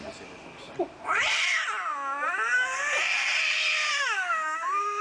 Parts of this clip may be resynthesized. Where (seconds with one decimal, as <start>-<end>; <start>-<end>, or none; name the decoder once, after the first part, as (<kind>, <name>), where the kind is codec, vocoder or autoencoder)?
3.9-5.0 (autoencoder, DAC-VAE)